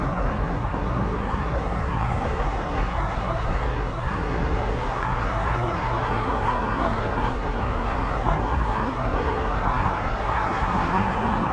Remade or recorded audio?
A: remade